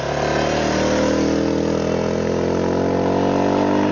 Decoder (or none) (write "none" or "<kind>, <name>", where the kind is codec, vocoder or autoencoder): none